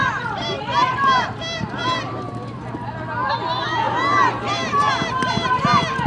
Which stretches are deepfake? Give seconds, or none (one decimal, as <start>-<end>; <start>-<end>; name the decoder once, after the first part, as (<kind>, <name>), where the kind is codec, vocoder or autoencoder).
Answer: 0.0-1.3 (vocoder, BigVGAN v2)